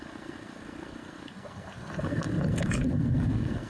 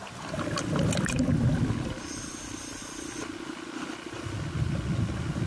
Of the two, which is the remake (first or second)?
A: first